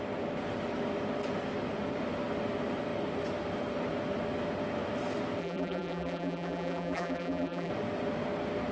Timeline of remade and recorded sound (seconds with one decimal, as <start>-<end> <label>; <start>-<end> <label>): 0.0-5.4 recorded; 5.4-7.7 remade; 7.7-8.7 recorded